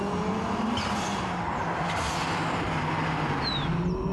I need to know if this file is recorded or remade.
recorded